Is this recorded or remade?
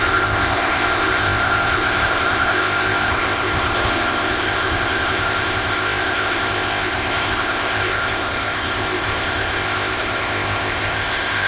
remade